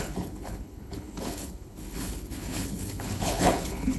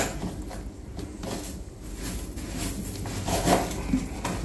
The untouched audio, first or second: second